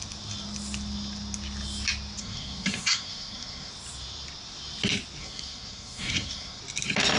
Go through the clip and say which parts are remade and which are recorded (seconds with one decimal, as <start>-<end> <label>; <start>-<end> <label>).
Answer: 0.0-2.2 recorded; 2.2-3.7 remade; 3.7-5.2 recorded; 5.2-6.6 remade; 6.6-7.2 recorded